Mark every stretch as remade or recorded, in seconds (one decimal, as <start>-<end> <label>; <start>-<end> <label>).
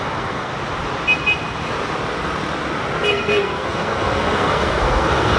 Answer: 0.0-0.5 remade; 0.5-3.1 recorded; 3.1-5.4 remade